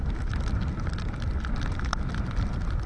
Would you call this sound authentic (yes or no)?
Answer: yes